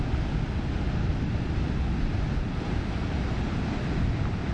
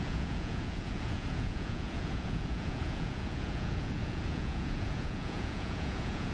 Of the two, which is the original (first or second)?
first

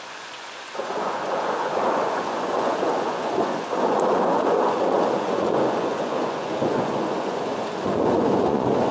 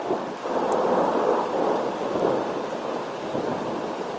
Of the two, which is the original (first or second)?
second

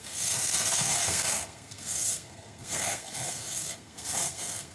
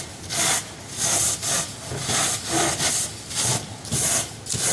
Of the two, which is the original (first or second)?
second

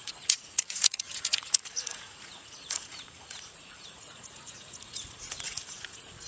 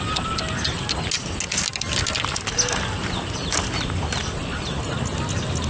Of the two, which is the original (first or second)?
second